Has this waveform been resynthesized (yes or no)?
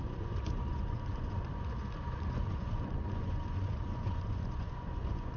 yes